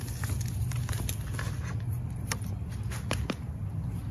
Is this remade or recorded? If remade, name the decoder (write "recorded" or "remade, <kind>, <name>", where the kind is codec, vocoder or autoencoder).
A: recorded